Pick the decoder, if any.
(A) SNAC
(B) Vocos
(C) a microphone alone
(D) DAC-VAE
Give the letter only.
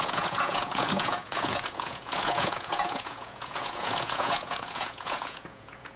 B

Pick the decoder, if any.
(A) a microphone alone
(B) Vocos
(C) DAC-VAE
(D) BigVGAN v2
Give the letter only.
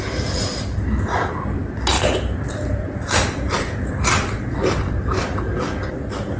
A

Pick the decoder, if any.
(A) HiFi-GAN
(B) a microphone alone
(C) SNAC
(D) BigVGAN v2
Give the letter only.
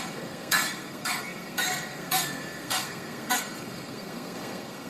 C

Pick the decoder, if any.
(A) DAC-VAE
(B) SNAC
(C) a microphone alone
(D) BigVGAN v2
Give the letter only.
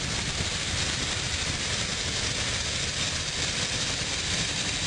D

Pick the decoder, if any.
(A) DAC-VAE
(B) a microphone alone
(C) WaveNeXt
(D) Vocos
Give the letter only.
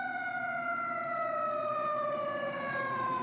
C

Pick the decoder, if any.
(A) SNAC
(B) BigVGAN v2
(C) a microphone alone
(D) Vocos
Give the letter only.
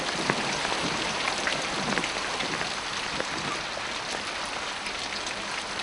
C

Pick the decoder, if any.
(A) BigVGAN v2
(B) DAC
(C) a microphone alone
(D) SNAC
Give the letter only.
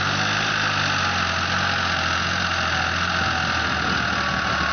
C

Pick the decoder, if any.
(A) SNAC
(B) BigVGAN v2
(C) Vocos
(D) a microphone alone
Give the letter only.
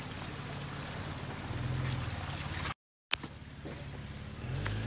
D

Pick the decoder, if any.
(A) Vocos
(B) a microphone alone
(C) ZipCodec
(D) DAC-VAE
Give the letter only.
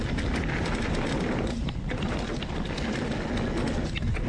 B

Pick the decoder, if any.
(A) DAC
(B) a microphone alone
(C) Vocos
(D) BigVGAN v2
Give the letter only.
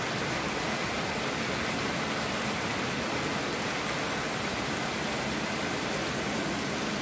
B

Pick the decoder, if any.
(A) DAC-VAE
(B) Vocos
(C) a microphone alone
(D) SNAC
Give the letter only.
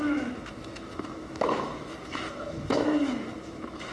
A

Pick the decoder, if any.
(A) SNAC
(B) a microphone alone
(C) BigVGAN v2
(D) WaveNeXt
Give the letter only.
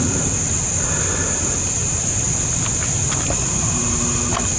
B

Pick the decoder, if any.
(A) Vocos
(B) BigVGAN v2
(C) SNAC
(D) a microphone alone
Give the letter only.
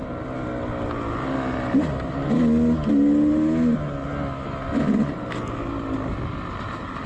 D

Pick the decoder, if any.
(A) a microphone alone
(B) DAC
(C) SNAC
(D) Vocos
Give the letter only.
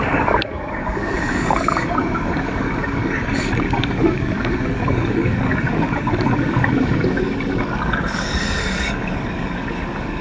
B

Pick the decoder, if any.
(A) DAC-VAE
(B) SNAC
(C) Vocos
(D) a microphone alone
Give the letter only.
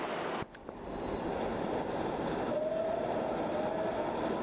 D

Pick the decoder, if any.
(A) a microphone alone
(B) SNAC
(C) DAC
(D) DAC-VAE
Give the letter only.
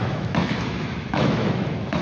D